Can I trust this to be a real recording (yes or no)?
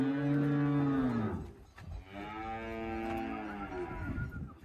yes